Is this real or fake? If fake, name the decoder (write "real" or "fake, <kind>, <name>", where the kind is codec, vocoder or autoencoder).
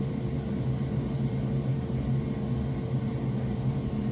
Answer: real